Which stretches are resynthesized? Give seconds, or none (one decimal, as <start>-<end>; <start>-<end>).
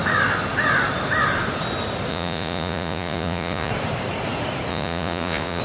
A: 2.1-3.7; 4.7-5.6